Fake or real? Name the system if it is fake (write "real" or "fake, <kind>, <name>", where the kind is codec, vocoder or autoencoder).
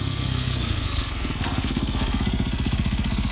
fake, codec, SNAC